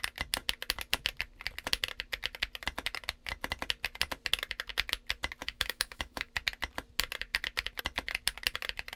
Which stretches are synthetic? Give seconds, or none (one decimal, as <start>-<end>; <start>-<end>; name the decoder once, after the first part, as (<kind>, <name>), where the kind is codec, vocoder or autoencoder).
5.4-6.3 (autoencoder, DAC-VAE)